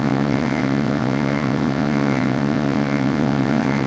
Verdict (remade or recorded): remade